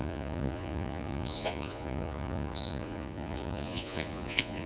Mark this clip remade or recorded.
remade